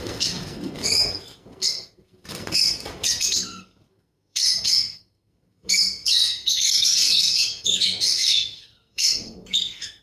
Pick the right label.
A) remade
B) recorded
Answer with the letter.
A